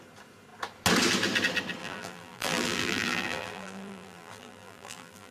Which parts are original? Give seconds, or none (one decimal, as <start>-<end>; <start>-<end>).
0.0-1.8